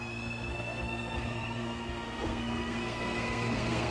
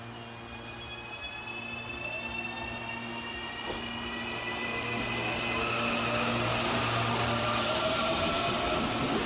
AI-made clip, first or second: first